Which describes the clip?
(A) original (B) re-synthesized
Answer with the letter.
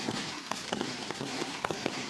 B